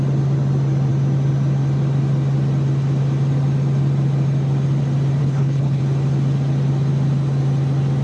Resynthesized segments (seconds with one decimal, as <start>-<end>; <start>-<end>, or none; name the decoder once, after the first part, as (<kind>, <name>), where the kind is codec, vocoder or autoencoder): 5.2-5.8 (codec, HILCodec)